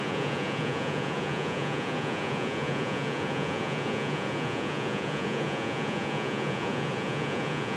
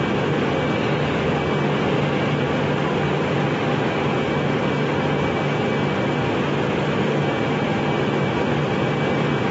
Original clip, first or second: second